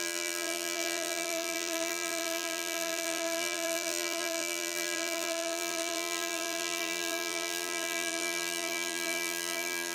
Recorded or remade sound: remade